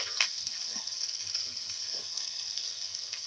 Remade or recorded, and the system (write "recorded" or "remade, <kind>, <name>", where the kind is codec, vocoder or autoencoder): remade, codec, SNAC